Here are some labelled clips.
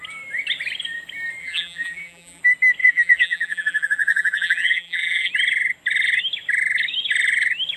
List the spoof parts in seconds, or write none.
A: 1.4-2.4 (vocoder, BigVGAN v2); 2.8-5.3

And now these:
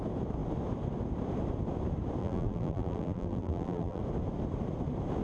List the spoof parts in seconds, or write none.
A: 2.2-4.0 (vocoder, BigVGAN v2)

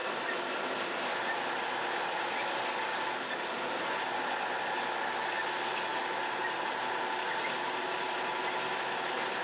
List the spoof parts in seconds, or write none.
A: none

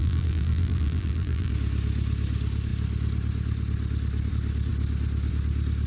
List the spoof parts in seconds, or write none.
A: 0.0-1.5 (vocoder, BigVGAN v2)